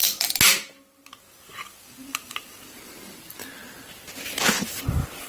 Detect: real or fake real